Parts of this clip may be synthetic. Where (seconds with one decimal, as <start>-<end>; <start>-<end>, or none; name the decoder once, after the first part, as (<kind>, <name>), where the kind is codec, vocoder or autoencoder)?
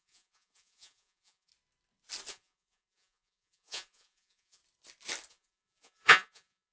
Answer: 0.0-1.5 (vocoder, Vocos); 2.3-4.6; 5.3-6.7